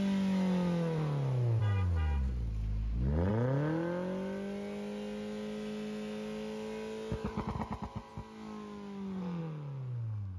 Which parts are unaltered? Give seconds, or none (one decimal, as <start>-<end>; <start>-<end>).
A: 0.0-10.4